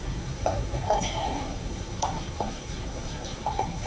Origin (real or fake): fake